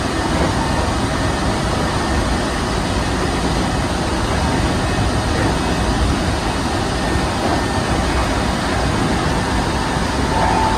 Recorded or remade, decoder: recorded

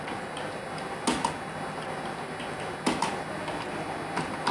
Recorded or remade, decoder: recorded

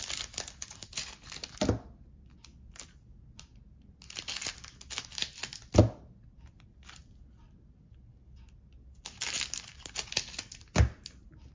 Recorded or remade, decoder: recorded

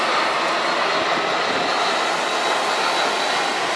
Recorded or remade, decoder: recorded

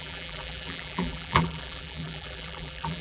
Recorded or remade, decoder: remade, vocoder, BigVGAN v2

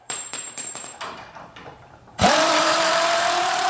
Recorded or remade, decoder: remade, vocoder, BigVGAN v2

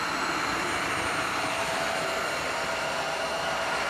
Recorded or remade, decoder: recorded